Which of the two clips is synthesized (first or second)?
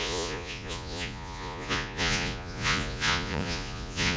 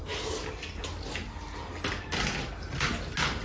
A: first